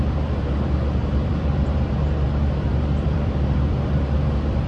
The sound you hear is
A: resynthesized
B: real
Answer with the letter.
A